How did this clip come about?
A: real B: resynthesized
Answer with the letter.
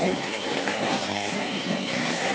B